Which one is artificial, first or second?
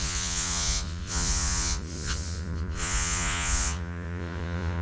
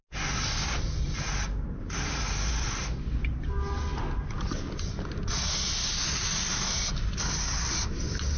first